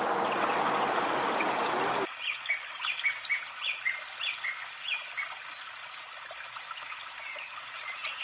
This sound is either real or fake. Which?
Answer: real